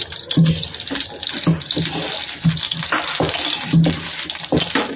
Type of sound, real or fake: real